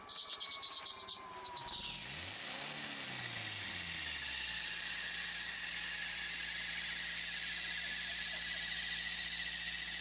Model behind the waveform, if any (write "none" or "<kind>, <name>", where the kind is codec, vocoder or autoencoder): none